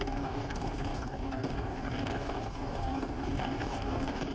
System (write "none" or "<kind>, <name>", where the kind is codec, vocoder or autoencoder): codec, DAC